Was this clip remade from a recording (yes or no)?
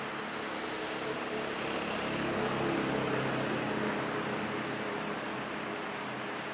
no